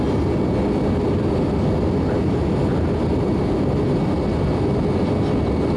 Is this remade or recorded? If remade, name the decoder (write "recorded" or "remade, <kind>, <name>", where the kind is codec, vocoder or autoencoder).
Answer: recorded